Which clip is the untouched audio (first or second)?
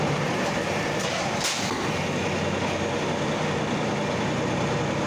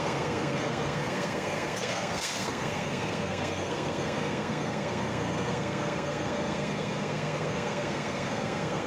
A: first